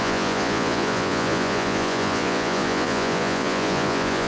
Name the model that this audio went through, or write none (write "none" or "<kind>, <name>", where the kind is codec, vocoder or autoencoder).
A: vocoder, Vocos